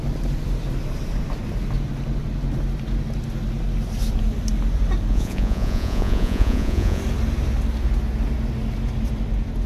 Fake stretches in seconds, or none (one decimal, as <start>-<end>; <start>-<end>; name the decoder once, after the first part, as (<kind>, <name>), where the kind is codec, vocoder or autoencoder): 5.1-7.0 (vocoder, Vocos)

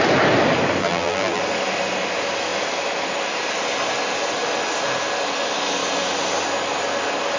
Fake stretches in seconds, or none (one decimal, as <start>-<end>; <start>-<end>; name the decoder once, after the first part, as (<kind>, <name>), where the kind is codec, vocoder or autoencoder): 0.8-1.4 (vocoder, BigVGAN v2)

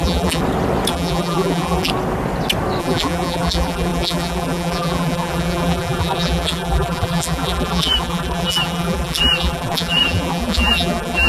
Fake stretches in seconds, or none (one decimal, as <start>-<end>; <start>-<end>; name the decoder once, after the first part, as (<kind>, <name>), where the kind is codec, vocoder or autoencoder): 0.0-0.4 (vocoder, BigVGAN v2); 0.9-1.9; 2.8-11.3